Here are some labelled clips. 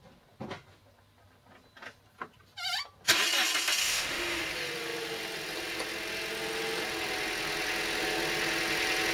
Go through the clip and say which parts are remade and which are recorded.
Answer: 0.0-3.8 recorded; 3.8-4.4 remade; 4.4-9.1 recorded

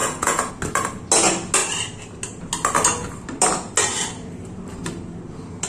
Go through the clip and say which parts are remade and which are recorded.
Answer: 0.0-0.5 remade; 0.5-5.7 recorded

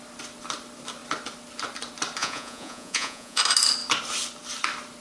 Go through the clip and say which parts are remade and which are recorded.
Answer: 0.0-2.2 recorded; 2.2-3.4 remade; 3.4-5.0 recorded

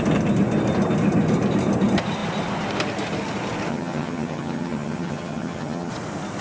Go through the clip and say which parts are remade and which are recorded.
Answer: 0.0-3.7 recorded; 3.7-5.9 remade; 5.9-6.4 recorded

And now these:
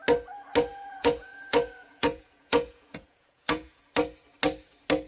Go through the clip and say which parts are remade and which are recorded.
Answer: 0.0-0.7 recorded; 0.7-3.8 remade; 3.8-5.1 recorded

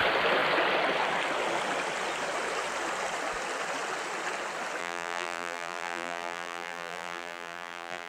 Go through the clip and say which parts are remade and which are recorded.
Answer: 0.0-4.8 recorded; 4.8-8.1 remade